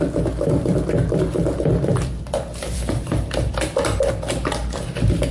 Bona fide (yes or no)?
no